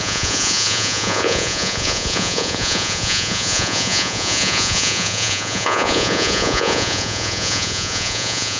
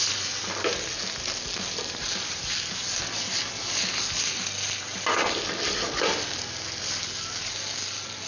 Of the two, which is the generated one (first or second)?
first